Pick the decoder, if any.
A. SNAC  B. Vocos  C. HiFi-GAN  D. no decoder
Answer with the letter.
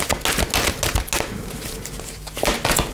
D